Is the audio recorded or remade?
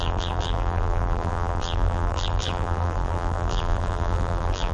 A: remade